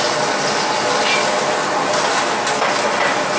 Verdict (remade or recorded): recorded